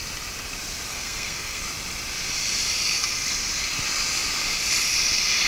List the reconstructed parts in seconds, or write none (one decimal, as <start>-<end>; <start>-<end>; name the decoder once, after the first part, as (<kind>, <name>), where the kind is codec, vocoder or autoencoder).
0.9-1.6 (codec, SNAC)